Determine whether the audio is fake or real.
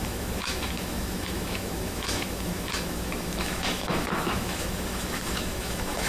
fake